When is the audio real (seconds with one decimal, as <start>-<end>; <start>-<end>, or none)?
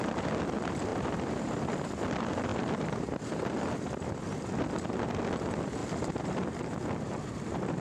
0.0-0.9; 1.6-7.8